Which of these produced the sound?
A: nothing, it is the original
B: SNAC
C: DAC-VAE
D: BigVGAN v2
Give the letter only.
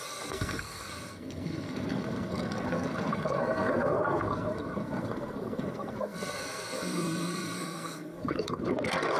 B